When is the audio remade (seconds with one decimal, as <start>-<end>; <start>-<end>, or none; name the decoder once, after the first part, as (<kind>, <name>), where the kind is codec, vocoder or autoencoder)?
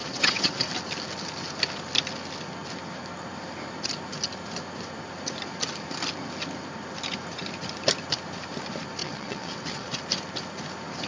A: 0.0-0.7 (vocoder, WaveNeXt); 9.0-10.0